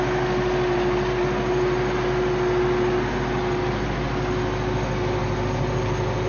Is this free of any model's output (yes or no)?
yes